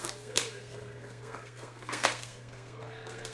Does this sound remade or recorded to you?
remade